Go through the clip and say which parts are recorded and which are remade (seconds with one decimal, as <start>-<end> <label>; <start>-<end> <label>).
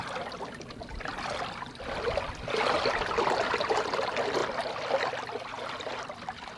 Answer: 0.0-6.6 recorded